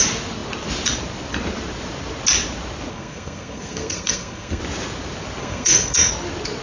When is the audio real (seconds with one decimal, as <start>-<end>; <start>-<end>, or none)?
0.0-2.9; 4.6-5.4; 6.1-6.6